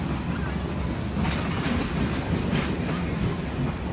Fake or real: real